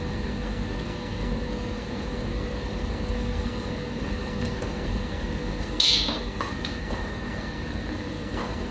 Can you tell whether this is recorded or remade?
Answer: remade